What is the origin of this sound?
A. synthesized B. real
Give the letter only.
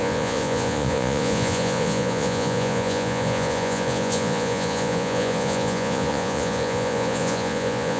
A